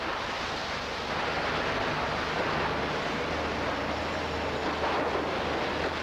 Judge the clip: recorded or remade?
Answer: recorded